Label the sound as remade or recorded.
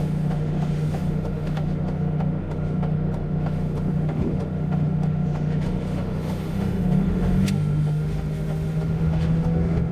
remade